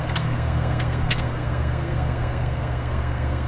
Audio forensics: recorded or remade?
remade